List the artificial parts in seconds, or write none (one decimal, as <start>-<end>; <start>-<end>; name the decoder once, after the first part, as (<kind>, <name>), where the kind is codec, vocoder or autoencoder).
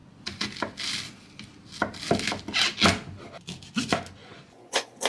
0.0-0.5 (vocoder, Vocos); 4.2-5.1